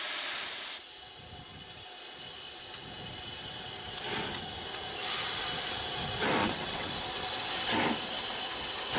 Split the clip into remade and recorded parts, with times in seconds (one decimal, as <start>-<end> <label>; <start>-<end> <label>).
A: 0.0-6.4 recorded; 6.4-6.9 remade; 6.9-9.0 recorded